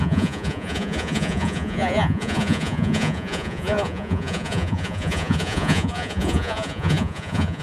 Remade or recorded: remade